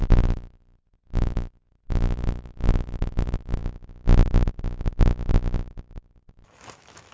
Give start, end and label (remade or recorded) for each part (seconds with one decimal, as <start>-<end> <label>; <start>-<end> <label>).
0.0-3.6 remade; 3.6-6.3 recorded; 6.3-7.1 remade